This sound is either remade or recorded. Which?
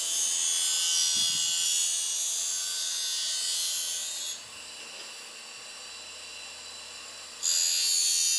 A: recorded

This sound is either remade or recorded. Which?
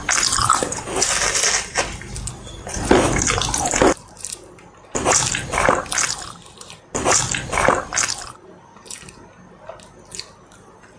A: recorded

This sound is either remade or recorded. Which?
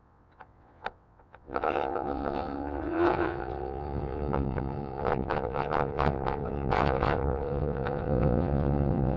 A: remade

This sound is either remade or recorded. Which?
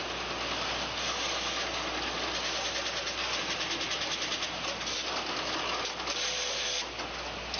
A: recorded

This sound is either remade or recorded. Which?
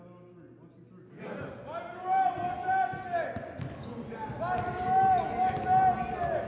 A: recorded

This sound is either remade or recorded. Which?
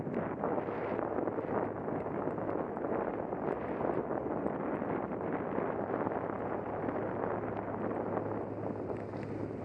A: recorded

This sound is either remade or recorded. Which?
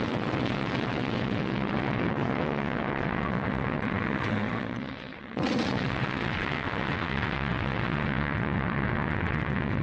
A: remade